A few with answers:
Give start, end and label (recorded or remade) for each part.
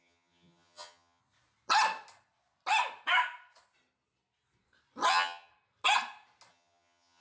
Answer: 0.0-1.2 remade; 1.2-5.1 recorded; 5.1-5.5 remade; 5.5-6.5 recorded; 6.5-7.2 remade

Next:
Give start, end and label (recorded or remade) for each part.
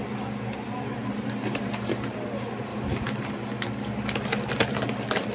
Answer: 0.0-1.0 recorded; 1.0-1.9 remade; 1.9-2.7 recorded; 2.7-3.3 remade; 3.3-5.3 recorded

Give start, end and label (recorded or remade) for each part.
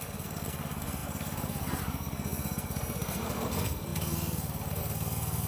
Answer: 0.0-5.5 remade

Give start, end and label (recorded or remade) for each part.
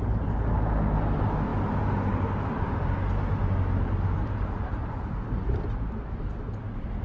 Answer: 0.0-4.2 recorded; 4.2-6.3 remade; 6.3-7.0 recorded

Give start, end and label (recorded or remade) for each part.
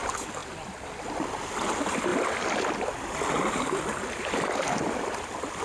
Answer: 0.0-5.6 recorded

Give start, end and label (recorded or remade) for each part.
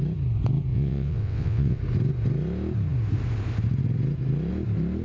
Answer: 0.0-0.7 recorded; 0.7-1.8 remade; 1.8-5.0 recorded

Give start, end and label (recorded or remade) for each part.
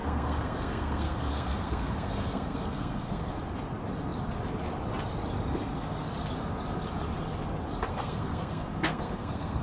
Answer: 0.0-3.3 remade; 3.3-7.9 recorded; 7.9-9.6 remade